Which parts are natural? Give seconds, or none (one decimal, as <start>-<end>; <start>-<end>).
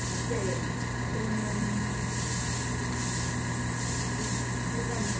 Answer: 0.0-5.2